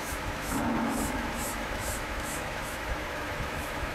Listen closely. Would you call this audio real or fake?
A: fake